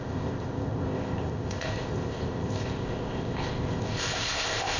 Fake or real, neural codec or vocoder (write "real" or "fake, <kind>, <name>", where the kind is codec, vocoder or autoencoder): fake, codec, ZipCodec